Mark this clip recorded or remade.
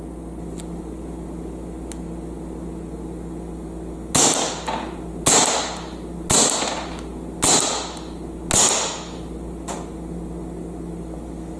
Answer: recorded